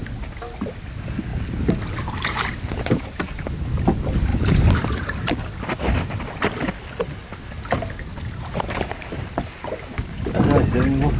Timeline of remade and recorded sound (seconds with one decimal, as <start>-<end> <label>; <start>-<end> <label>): 0.0-1.3 recorded; 1.3-3.2 remade; 3.2-4.3 recorded; 4.3-5.3 remade; 5.3-8.1 recorded; 8.1-9.8 remade; 9.8-11.2 recorded